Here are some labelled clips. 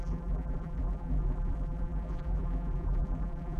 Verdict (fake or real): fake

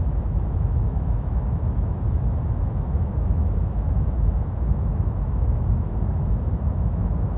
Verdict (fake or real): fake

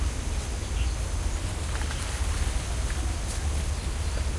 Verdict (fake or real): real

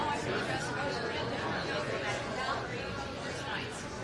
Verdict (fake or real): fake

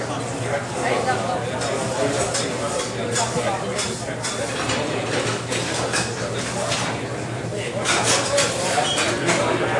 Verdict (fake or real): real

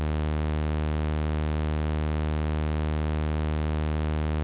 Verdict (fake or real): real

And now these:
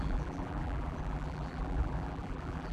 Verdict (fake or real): fake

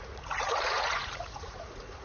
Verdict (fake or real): fake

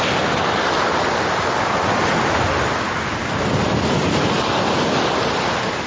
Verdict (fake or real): real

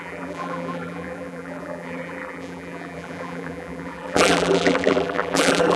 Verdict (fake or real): fake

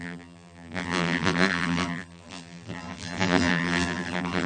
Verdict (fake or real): fake